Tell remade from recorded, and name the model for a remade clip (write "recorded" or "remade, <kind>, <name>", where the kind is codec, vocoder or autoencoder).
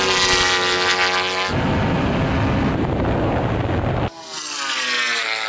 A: recorded